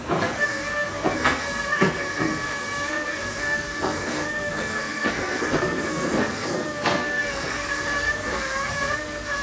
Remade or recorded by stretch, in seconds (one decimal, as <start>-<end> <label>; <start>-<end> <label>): 0.0-9.4 remade